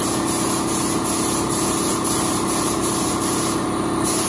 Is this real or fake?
real